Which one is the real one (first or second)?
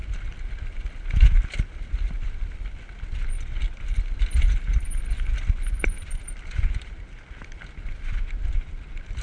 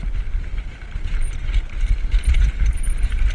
first